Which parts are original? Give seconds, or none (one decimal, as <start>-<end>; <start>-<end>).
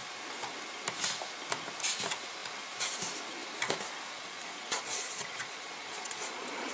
0.0-4.2